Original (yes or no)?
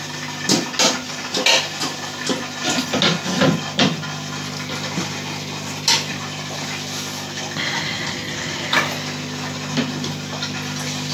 yes